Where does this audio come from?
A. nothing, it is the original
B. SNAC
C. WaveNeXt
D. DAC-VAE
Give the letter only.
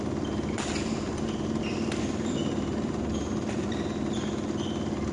A